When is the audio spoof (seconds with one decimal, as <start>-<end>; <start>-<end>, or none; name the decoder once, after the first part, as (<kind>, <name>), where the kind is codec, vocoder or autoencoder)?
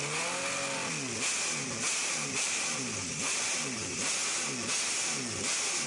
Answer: 2.0-4.1 (vocoder, BigVGAN v2)